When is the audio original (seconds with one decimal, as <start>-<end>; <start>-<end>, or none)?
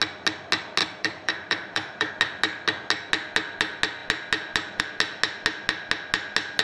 0.0-0.8; 2.1-6.6